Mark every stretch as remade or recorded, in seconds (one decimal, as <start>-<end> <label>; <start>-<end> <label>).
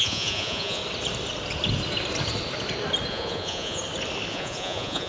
0.0-0.8 remade; 0.8-3.1 recorded; 3.1-3.8 remade; 3.8-4.3 recorded; 4.3-5.1 remade